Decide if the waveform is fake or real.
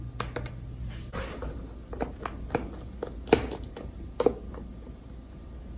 real